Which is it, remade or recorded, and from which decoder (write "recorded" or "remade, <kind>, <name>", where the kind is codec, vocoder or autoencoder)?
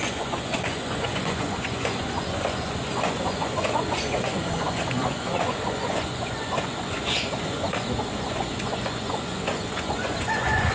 remade, vocoder, Vocos